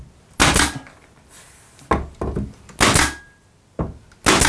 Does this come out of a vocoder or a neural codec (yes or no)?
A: no